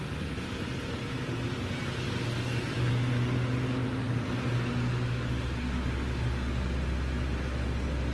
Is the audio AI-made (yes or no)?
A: no